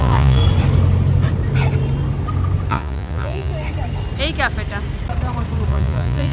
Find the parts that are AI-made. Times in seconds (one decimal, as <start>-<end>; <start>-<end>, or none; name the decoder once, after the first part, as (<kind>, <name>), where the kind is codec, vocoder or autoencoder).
0.0-0.4 (vocoder, Vocos); 2.7-3.5; 5.7-6.3